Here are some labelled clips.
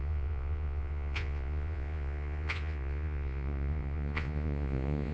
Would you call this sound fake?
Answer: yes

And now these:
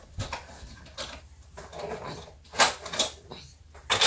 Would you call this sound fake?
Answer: no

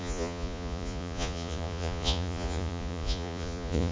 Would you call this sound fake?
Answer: yes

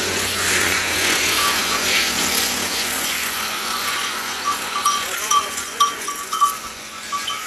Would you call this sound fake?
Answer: yes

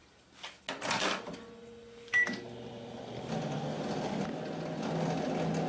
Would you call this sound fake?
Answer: no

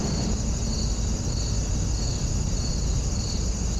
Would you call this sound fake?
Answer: no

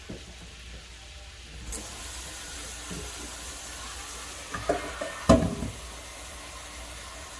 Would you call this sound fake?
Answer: no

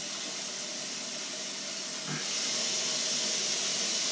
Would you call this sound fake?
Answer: no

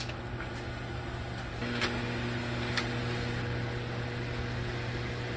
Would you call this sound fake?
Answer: no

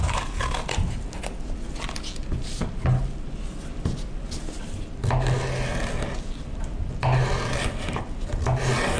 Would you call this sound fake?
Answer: no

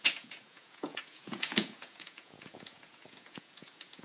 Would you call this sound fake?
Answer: yes